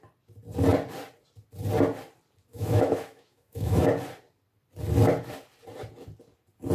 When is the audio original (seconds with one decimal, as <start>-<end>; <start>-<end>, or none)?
0.0-2.5; 3.8-6.7